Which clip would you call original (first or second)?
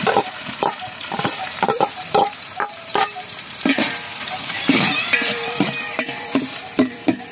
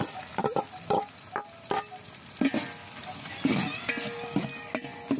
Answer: second